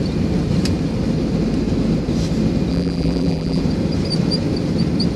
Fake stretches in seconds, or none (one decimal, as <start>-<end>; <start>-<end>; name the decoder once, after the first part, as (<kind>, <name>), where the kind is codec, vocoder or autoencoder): 2.7-3.6 (vocoder, BigVGAN v2)

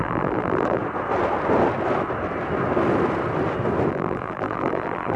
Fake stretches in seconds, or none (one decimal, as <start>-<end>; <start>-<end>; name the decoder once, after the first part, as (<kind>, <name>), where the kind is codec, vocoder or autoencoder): 0.0-0.8 (vocoder, BigVGAN v2); 3.9-5.2

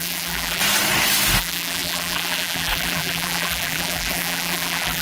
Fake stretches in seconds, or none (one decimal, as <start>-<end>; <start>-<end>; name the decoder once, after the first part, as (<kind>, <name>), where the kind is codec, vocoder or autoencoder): 0.0-0.6 (vocoder, BigVGAN v2); 1.4-5.0